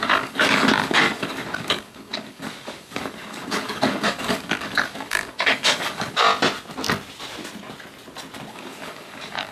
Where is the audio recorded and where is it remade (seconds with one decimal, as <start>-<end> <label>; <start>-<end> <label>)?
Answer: 0.0-6.3 remade; 6.3-8.5 recorded; 8.5-9.5 remade